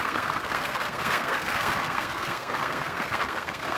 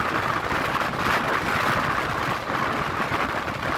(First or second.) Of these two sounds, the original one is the second